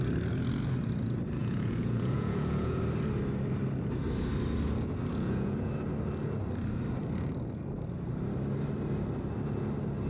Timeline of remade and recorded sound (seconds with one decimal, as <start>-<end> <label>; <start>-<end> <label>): 0.0-1.4 recorded; 1.4-2.8 remade; 2.8-5.1 recorded; 5.1-5.7 remade; 5.7-10.1 recorded